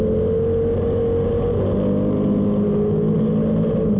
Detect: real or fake real